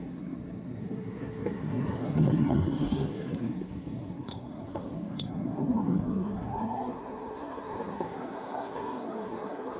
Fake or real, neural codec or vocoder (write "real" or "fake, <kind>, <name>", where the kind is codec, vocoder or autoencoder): fake, codec, SNAC